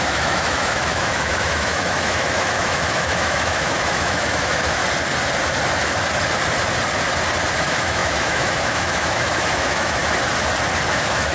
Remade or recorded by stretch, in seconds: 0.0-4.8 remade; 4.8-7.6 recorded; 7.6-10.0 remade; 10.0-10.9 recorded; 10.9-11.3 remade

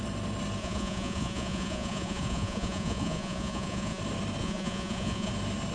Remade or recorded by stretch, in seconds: 0.0-0.6 recorded; 0.6-4.0 remade; 4.0-4.4 recorded; 4.4-5.3 remade; 5.3-5.7 recorded

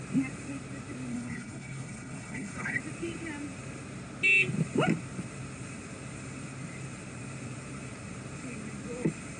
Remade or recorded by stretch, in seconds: 0.0-1.1 recorded; 1.1-2.8 remade; 2.8-9.4 recorded